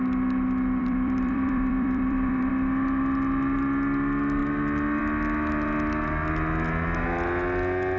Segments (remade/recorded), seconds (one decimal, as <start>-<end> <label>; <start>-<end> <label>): 0.0-0.8 recorded; 0.8-2.5 remade; 2.5-8.0 recorded